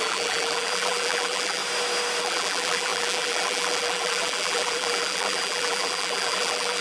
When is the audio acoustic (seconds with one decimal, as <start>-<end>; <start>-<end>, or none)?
1.6-2.2